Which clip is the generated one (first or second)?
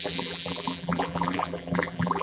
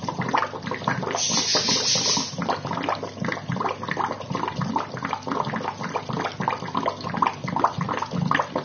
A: first